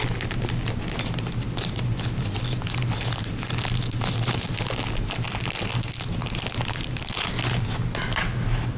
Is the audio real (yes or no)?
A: yes